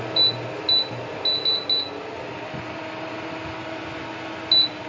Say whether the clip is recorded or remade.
recorded